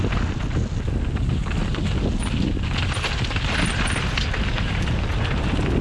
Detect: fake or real real